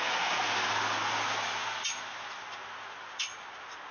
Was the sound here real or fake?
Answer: real